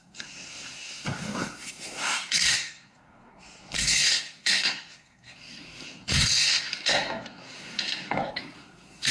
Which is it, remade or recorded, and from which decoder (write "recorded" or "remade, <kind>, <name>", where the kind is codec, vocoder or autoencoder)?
remade, codec, SNAC